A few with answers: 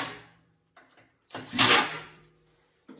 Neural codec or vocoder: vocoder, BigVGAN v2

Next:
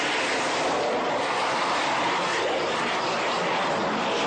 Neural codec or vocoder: vocoder, BigVGAN v2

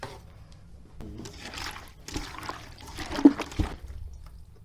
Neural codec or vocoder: none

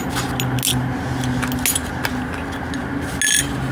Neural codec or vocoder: none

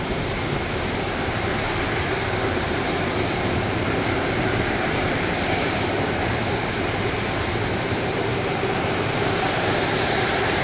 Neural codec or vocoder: vocoder, BigVGAN v2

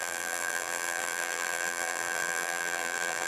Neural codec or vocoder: vocoder, BigVGAN v2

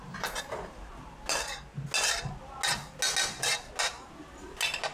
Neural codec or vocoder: none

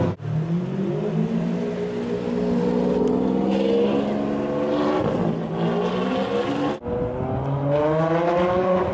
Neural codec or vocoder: none